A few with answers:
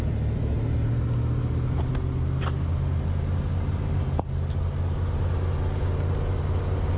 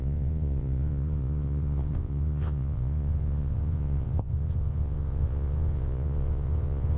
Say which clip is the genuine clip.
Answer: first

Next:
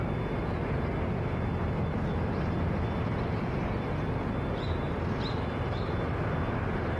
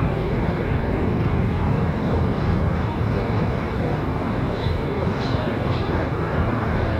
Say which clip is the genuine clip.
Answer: first